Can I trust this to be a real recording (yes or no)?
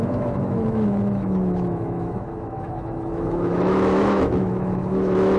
no